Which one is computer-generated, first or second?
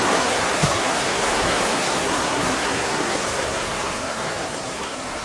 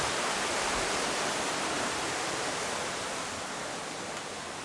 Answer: first